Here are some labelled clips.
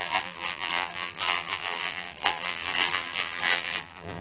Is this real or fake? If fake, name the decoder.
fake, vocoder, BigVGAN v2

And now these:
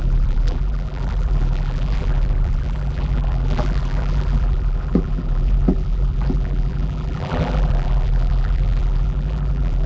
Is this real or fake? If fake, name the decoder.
fake, vocoder, BigVGAN v2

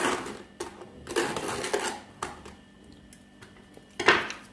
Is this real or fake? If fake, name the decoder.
real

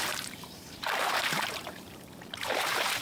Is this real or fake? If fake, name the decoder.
fake, vocoder, BigVGAN v2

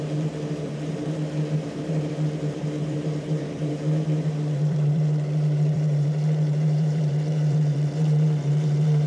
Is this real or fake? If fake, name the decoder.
fake, vocoder, BigVGAN v2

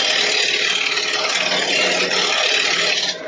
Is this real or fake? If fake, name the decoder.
real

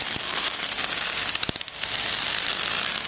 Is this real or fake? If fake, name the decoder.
real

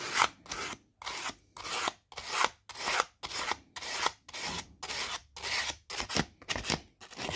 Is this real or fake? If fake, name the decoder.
real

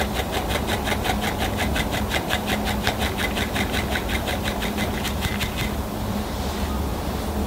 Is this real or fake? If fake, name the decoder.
real